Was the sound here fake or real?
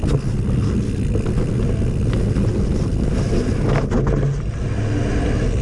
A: real